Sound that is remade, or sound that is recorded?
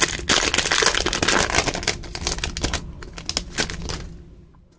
recorded